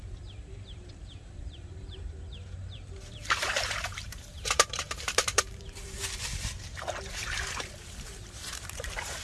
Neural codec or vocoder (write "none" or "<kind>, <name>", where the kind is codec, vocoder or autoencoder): vocoder, BigVGAN v2